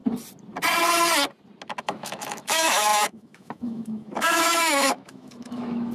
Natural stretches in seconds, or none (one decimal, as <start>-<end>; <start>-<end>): 0.0-1.8